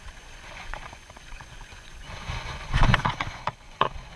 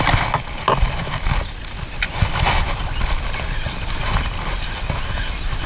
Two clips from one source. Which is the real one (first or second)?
second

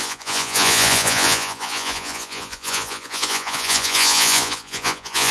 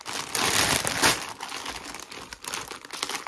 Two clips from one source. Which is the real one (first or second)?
second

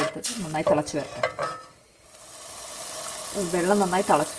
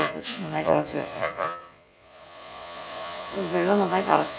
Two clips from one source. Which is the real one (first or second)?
first